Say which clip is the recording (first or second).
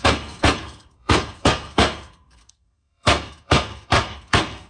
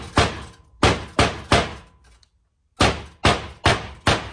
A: second